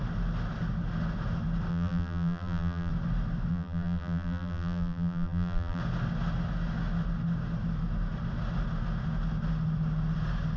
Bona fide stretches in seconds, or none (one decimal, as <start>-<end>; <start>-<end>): 0.0-1.7; 2.9-3.5; 5.8-10.6